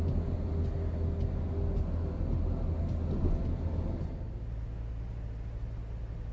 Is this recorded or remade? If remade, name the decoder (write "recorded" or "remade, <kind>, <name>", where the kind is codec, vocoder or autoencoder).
recorded